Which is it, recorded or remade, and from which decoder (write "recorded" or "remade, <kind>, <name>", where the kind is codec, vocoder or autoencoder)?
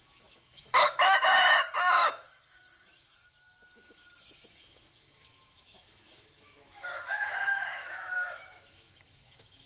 remade, autoencoder, DAC-VAE